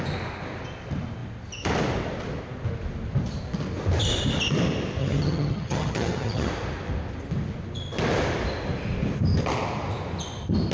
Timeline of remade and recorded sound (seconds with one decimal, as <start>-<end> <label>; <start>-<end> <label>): 0.0-5.0 recorded; 5.0-6.5 remade; 6.5-10.7 recorded